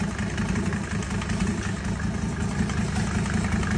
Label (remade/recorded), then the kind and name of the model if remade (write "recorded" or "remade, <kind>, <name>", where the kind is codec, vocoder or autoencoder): recorded